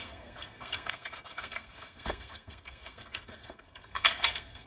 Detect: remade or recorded remade